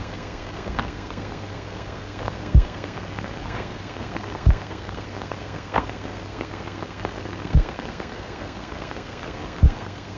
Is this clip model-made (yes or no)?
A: yes